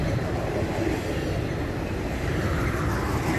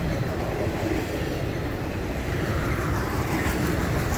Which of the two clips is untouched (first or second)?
first